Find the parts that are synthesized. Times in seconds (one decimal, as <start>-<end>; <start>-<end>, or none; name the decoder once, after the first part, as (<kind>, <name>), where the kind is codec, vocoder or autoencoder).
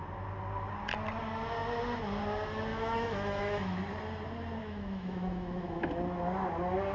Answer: 2.7-3.8 (autoencoder, DAC-VAE); 4.6-5.9